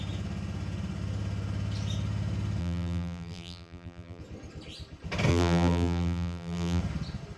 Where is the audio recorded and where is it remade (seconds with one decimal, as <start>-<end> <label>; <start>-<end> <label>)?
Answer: 0.0-2.6 recorded; 2.6-4.2 remade; 4.2-5.3 recorded; 5.3-6.8 remade; 6.8-7.4 recorded